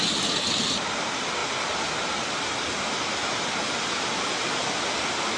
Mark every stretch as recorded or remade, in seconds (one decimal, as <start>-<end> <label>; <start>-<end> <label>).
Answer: 0.0-5.4 recorded